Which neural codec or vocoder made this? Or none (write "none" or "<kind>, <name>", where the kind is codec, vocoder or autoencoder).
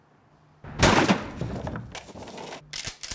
none